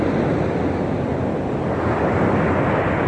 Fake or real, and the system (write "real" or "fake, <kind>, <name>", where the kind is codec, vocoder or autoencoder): real